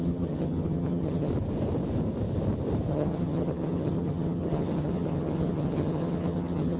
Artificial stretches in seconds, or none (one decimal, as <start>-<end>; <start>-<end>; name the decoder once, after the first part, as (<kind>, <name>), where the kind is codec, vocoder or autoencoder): 0.0-1.3 (vocoder, HiFi-GAN); 2.9-6.8